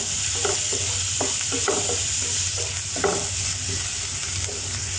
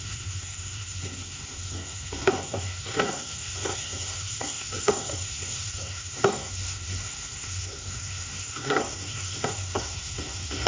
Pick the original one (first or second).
first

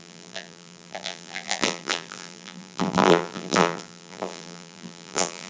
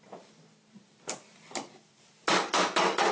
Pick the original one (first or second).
second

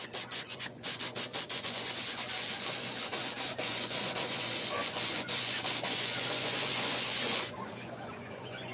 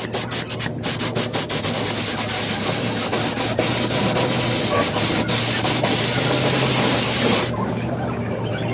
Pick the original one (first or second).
second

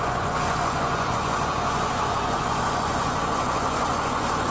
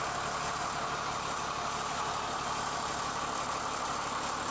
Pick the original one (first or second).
second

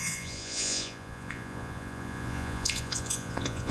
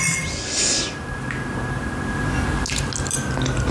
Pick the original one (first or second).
second